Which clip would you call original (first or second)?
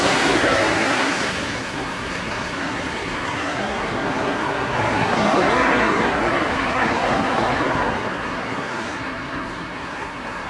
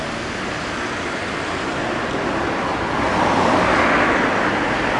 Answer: second